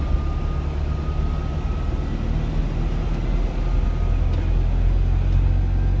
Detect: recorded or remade recorded